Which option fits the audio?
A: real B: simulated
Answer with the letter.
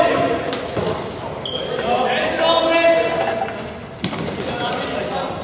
A